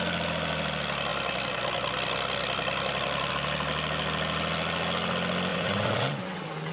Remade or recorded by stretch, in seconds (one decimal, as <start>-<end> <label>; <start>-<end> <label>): 0.0-5.5 recorded; 5.5-6.7 remade